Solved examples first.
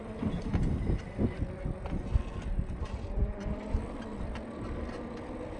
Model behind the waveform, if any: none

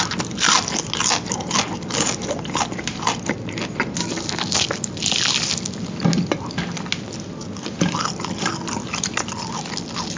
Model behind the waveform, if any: none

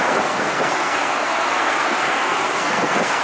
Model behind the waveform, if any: codec, SNAC